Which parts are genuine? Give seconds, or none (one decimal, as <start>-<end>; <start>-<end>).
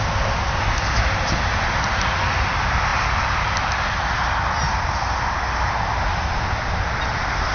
0.0-7.5